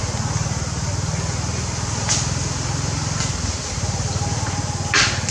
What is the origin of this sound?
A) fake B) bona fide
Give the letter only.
B